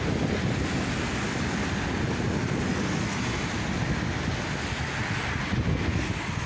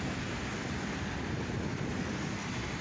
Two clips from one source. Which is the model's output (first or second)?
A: second